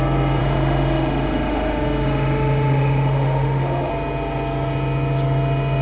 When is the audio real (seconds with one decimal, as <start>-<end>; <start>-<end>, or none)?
0.0-0.4; 3.9-5.8